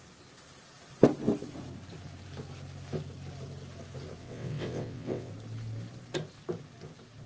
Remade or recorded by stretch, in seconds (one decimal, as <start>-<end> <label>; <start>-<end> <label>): 0.0-4.2 recorded; 4.2-5.3 remade; 5.3-7.3 recorded